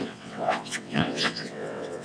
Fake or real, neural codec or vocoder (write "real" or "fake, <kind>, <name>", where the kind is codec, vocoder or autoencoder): fake, vocoder, WaveNeXt